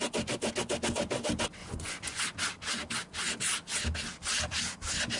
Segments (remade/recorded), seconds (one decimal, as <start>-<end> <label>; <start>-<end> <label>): 0.0-1.6 recorded; 1.6-2.2 remade; 2.2-5.2 recorded